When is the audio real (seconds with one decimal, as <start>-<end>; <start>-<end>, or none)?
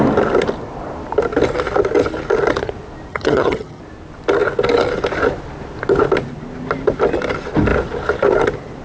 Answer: 0.0-3.1; 3.8-8.8